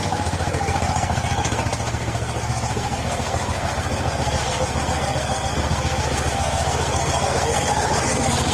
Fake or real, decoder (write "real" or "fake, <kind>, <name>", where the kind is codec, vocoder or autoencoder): fake, codec, SNAC